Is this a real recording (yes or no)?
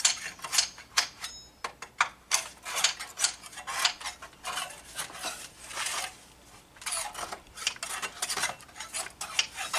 yes